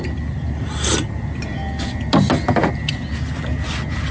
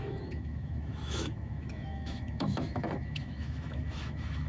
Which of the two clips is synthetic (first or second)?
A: second